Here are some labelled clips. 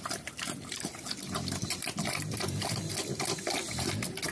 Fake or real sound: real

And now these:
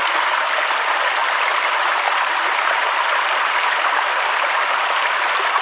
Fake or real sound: real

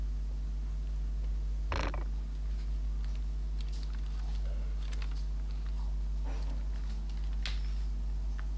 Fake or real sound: real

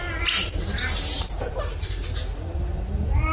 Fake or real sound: fake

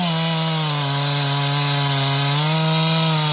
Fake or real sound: real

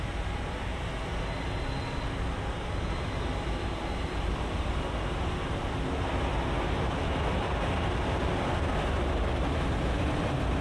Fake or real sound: real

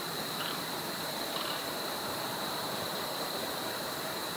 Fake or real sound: fake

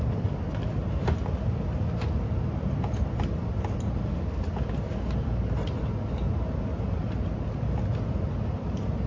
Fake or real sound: real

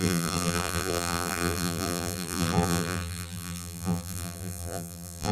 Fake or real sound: fake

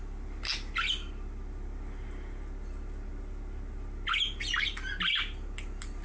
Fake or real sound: real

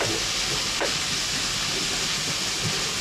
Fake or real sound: real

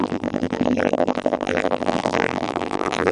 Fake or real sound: fake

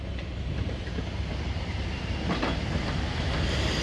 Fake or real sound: real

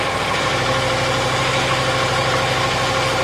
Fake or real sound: real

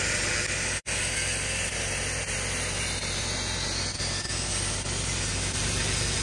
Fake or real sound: real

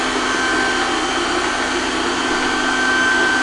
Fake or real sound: real